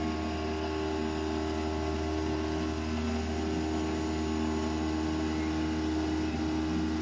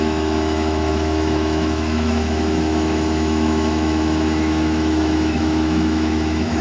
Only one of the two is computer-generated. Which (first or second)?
second